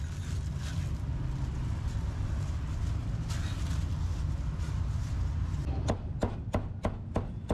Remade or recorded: recorded